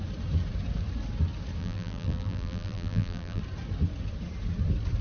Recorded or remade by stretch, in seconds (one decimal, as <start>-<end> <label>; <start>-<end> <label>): 0.0-1.6 recorded; 1.6-3.4 remade; 3.4-5.0 recorded